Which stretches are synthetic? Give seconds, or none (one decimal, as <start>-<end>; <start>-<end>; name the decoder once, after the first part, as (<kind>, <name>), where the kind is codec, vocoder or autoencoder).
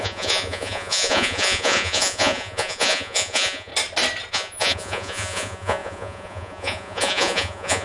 0.0-3.7 (vocoder, Vocos); 4.3-7.8